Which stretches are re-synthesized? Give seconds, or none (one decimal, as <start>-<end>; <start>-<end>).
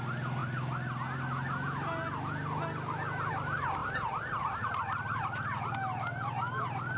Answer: none